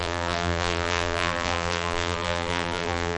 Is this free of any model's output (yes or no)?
no